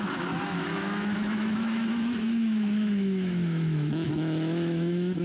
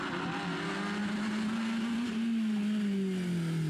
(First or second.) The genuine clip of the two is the second